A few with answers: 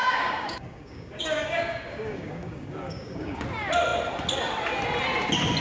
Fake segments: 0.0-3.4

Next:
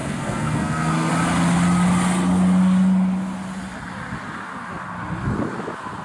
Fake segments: 0.0-1.1

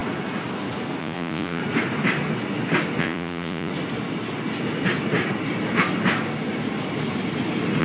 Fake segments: 1.0-1.6; 3.0-3.7

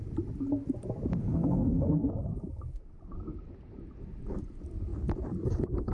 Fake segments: 1.2-2.1